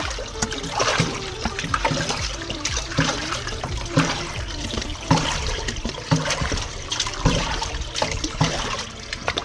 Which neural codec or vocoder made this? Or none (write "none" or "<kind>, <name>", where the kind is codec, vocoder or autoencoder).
vocoder, BigVGAN v2